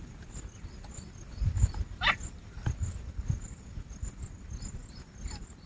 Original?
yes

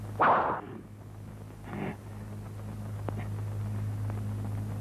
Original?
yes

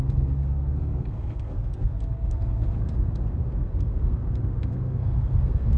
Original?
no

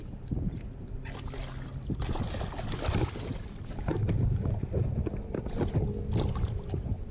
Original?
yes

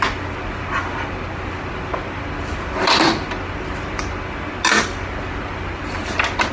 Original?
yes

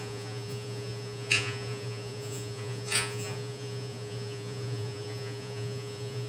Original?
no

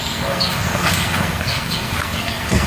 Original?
no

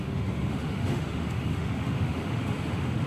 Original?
no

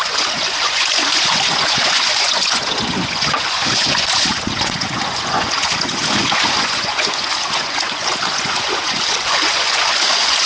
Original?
no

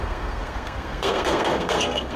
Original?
no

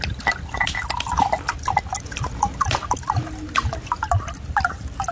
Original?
yes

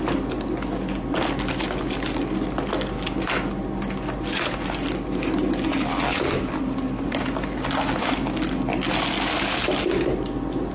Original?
yes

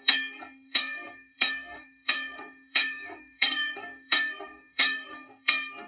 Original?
no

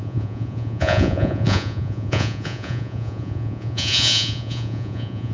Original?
no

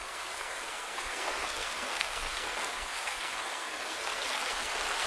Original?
no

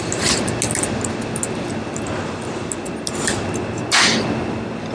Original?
yes